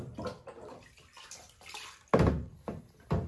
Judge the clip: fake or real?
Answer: real